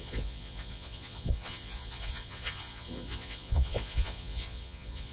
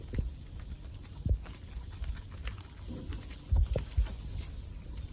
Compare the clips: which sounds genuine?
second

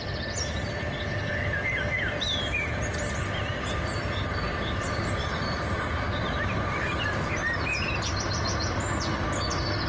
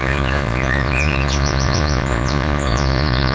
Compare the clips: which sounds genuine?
first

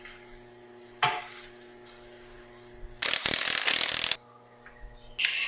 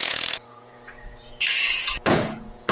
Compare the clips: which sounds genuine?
first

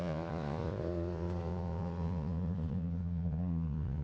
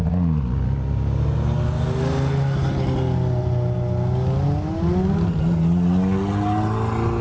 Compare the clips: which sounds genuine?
second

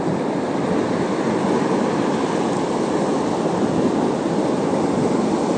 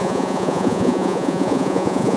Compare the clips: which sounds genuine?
first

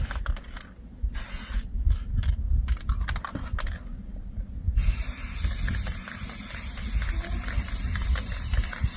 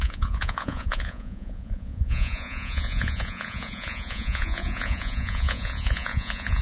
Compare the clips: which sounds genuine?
first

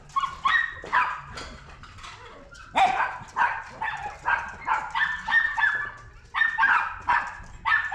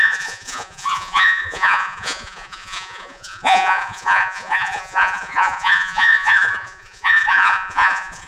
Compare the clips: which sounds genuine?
first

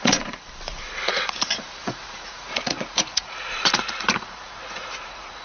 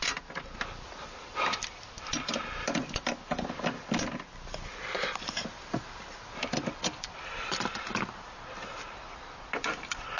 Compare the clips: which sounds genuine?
second